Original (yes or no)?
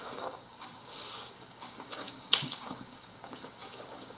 no